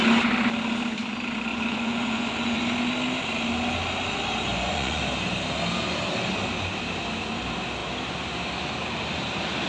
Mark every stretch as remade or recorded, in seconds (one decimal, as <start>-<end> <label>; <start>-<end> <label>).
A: 0.0-1.5 recorded; 1.5-2.6 remade; 2.6-4.5 recorded; 4.5-5.0 remade; 5.0-9.7 recorded

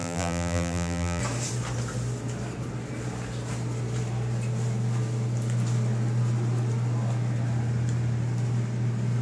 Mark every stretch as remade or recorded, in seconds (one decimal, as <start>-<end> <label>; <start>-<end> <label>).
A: 0.0-1.2 remade; 1.2-9.2 recorded